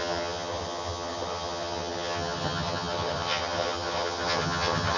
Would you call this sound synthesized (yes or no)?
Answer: yes